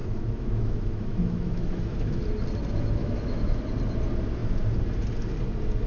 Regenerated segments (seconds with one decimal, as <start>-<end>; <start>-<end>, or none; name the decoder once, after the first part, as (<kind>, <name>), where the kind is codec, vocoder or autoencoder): 0.0-2.2 (autoencoder, DAC-VAE); 3.0-3.6